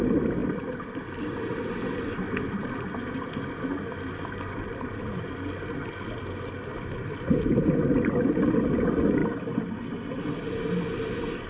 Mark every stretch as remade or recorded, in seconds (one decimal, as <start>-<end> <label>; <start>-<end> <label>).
0.0-11.5 recorded